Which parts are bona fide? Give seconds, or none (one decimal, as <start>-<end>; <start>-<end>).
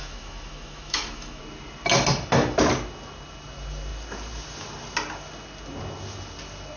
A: 1.4-6.8